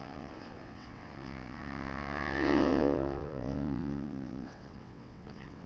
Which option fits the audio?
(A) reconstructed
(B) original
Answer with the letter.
A